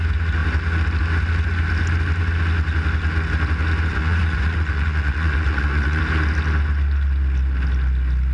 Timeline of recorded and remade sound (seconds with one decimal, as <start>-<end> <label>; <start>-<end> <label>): 0.0-3.9 recorded; 3.9-6.0 remade; 6.0-8.3 recorded